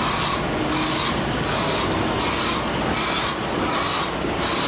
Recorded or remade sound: recorded